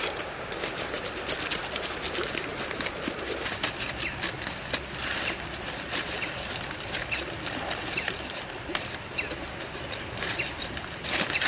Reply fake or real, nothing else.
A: real